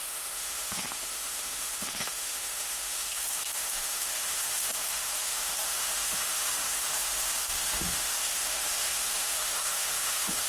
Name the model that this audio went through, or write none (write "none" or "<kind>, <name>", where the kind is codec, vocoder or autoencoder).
autoencoder, DAC-VAE